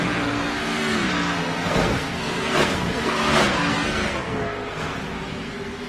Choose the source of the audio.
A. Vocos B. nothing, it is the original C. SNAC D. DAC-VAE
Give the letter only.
C